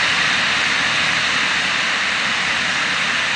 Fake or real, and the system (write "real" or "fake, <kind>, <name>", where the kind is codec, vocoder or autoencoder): real